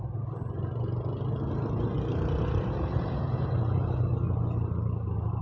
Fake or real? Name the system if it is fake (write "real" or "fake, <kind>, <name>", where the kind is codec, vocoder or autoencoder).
real